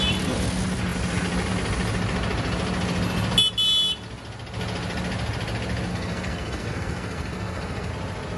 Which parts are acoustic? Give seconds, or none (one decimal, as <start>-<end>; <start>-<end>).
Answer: 0.0-5.9; 7.9-8.4